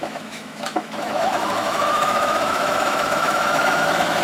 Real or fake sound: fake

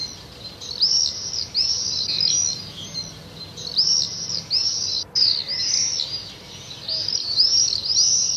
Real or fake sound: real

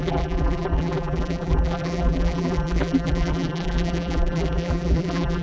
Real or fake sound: fake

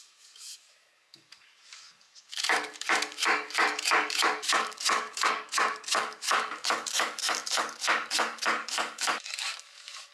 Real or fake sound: fake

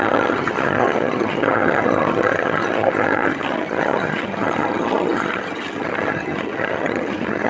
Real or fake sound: fake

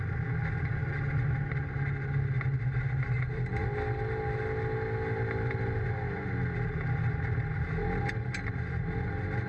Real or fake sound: real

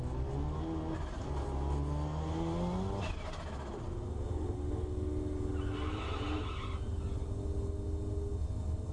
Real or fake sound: real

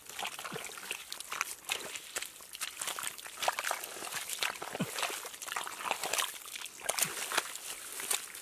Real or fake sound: real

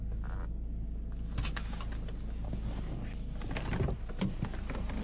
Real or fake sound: real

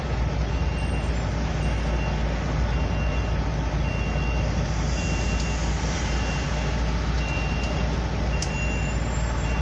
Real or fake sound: real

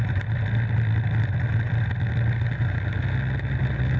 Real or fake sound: real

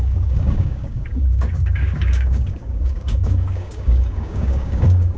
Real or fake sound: fake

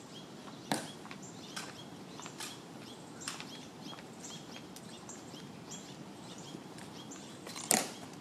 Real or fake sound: fake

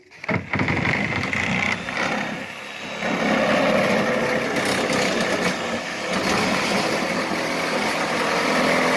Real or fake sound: real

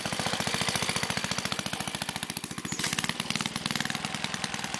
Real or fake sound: real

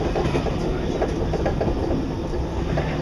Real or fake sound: real